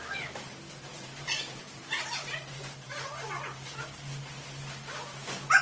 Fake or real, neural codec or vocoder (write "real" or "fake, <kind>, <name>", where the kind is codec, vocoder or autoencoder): real